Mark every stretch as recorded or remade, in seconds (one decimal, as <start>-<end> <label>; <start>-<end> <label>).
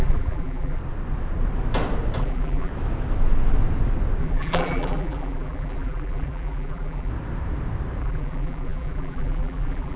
0.0-0.8 remade; 0.8-2.2 recorded; 2.2-2.7 remade; 2.7-4.2 recorded; 4.2-7.1 remade; 7.1-8.0 recorded; 8.0-10.0 remade